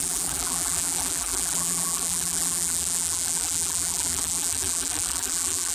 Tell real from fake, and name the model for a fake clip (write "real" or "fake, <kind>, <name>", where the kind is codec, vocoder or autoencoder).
fake, vocoder, BigVGAN v2